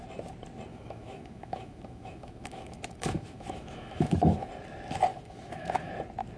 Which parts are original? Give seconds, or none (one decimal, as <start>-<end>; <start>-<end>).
0.0-0.7; 4.5-5.1; 5.9-6.4